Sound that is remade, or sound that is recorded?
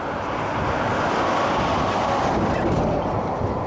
recorded